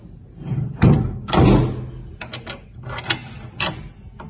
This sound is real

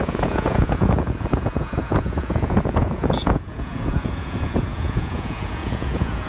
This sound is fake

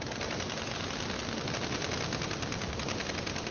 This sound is real